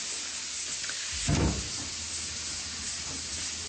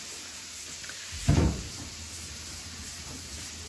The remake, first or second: second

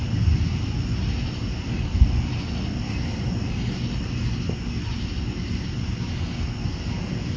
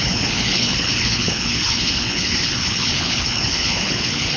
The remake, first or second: second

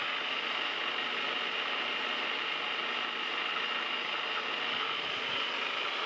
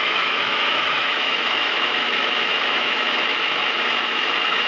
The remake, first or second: second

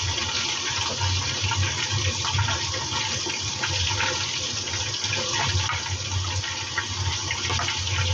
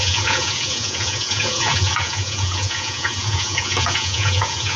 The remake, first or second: second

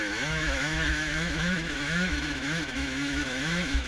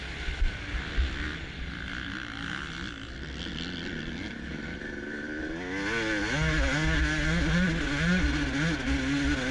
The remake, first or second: first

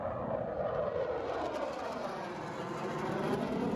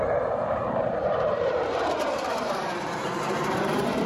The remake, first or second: second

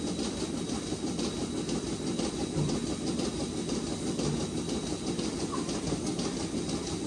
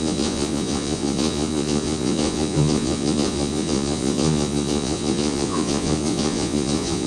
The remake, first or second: second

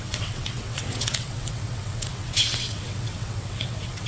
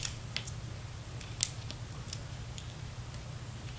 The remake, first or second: first